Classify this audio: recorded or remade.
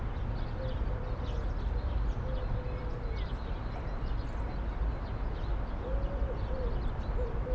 recorded